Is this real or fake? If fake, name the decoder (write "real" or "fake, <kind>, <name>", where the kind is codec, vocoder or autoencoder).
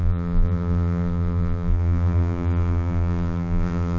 fake, vocoder, BigVGAN v2